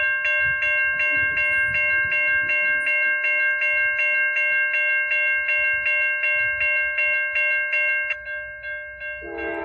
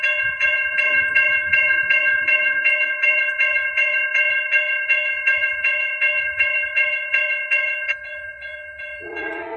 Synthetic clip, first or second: second